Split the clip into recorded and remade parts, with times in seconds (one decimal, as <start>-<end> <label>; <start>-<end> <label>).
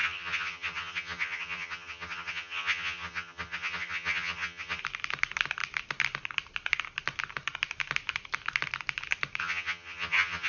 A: 0.0-4.8 remade; 4.8-9.4 recorded; 9.4-10.5 remade